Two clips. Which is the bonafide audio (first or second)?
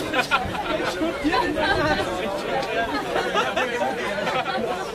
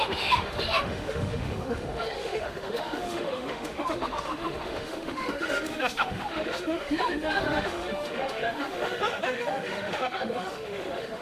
first